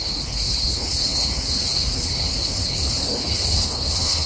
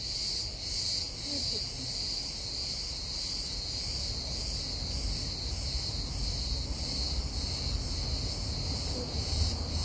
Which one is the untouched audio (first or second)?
second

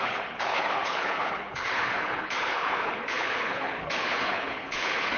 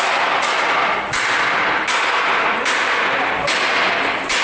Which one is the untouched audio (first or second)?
second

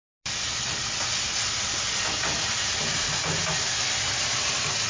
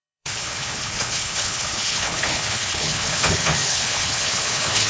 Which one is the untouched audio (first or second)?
first